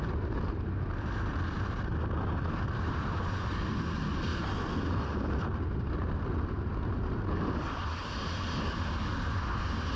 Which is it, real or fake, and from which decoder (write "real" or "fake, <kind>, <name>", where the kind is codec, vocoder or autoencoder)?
real